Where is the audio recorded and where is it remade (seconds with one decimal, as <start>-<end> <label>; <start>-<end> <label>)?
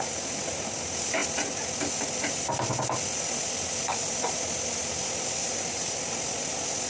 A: 0.0-5.4 recorded; 5.4-5.9 remade; 5.9-6.9 recorded